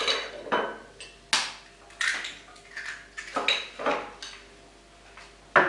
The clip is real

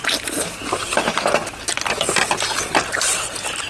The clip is real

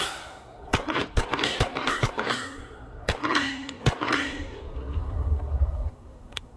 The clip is fake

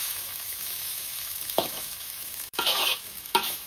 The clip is fake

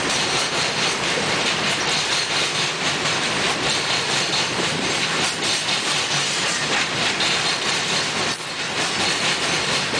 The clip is real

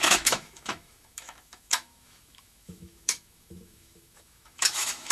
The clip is fake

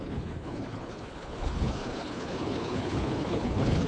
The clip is fake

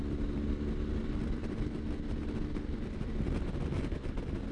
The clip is real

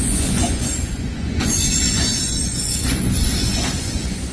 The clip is fake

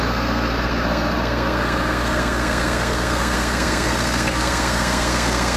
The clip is fake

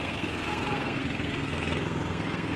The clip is fake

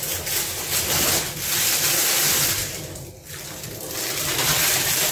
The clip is real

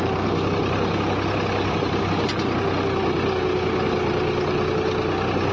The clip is real